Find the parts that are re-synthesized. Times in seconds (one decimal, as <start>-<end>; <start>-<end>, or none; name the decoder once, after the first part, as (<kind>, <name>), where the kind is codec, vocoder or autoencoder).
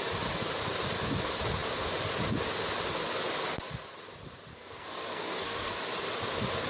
4.5-5.8 (codec, SNAC)